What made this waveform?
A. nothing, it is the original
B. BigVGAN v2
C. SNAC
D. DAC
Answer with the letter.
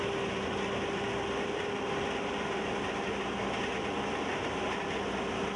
A